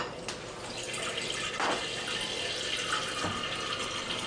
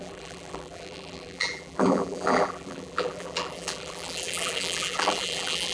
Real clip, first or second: first